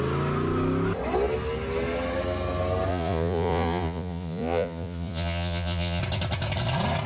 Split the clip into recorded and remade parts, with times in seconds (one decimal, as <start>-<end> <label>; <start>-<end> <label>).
0.0-2.9 recorded; 2.9-6.0 remade; 6.0-7.1 recorded